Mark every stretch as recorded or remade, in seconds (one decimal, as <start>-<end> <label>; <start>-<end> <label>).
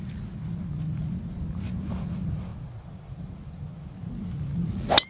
0.0-5.1 recorded